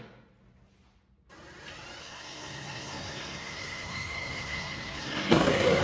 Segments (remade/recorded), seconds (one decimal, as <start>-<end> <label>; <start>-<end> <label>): 0.0-2.0 recorded; 2.0-5.8 remade